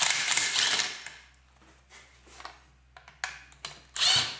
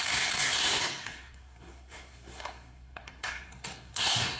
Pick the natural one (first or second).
first